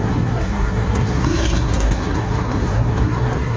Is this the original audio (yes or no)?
no